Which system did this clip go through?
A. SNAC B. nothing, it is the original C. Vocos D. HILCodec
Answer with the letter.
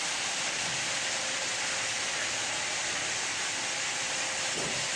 B